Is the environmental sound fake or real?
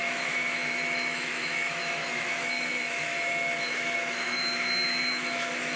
fake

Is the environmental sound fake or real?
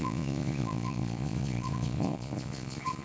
fake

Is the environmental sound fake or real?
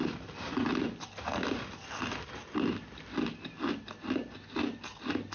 real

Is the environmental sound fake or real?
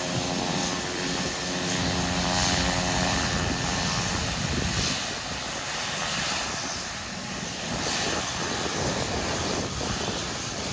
real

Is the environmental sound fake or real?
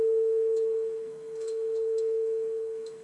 fake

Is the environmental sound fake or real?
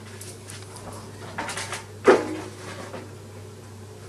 real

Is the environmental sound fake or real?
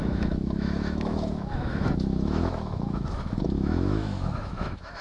fake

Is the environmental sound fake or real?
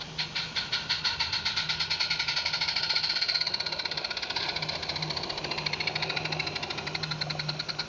real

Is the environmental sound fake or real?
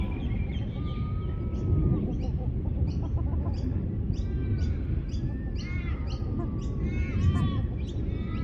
real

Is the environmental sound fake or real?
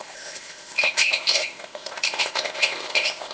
fake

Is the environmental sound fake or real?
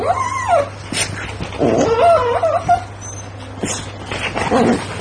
real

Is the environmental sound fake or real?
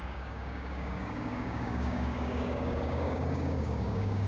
fake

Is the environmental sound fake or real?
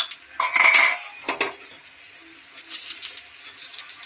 real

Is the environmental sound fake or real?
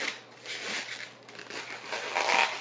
real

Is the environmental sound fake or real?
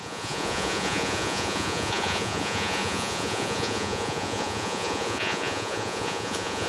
fake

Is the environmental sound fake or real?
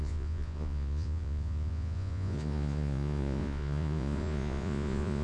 fake